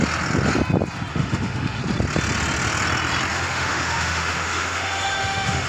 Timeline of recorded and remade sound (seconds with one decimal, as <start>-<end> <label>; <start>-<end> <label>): 0.0-1.1 recorded; 1.1-1.8 remade; 1.8-3.3 recorded; 3.3-5.7 remade